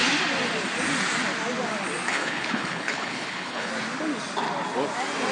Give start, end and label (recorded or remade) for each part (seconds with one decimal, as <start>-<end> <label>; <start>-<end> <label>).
0.0-2.1 recorded; 2.1-3.7 remade; 3.7-5.3 recorded